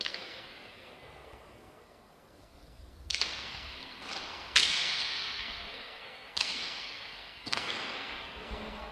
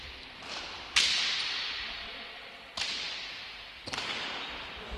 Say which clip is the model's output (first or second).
first